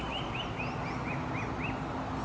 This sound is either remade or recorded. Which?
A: recorded